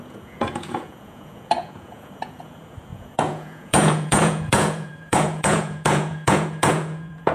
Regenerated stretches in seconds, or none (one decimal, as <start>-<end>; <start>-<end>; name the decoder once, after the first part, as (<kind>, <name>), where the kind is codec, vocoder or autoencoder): 0.0-7.3 (vocoder, Vocos)